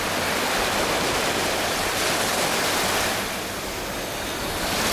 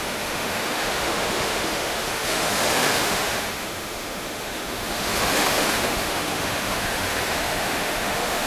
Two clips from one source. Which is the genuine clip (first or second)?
first